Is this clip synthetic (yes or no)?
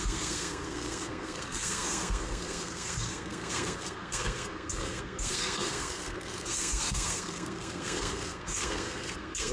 yes